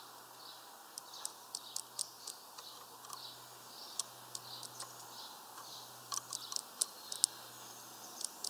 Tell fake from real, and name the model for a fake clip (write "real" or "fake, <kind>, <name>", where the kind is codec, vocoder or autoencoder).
real